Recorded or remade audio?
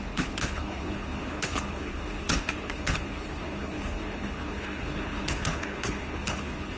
remade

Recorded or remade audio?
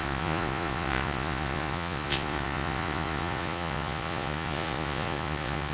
remade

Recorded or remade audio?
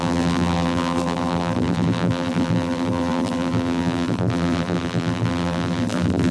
remade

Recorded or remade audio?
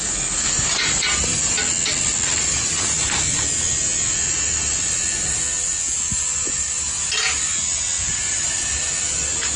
recorded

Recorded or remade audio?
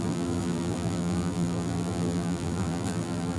remade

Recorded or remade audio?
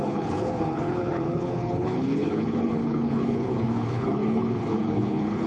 remade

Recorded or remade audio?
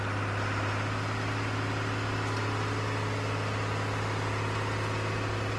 recorded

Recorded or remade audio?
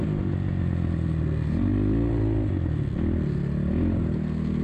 recorded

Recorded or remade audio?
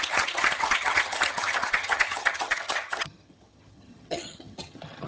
remade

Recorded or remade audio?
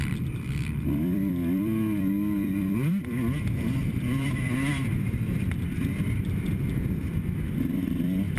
remade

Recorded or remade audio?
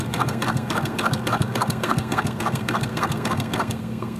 remade